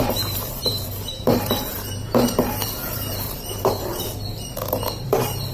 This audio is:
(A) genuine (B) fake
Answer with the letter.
B